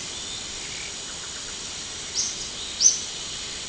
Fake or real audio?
real